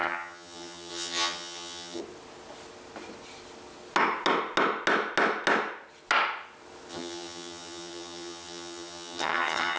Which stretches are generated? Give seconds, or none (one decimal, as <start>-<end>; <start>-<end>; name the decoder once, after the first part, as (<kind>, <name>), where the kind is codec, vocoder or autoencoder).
0.0-2.0 (vocoder, HiFi-GAN); 6.9-9.8

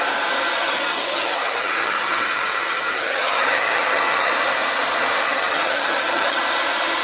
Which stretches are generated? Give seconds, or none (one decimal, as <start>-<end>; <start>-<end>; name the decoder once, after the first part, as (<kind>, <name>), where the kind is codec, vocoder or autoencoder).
0.6-4.3 (vocoder, HiFi-GAN); 5.2-6.4

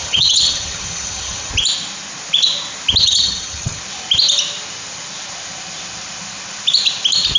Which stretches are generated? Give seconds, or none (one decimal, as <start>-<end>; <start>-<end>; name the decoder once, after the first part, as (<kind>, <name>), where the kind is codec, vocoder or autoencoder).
0.0-1.5 (vocoder, HiFi-GAN); 3.0-3.8

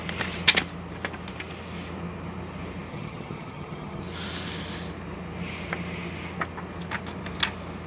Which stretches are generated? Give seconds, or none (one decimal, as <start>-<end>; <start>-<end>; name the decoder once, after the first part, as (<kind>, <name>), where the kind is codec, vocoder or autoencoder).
2.9-4.0 (vocoder, HiFi-GAN)

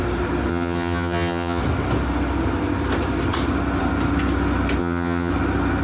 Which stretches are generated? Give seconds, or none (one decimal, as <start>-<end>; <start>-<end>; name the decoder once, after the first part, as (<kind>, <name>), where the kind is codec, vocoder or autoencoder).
0.5-1.6 (vocoder, HiFi-GAN); 4.8-5.3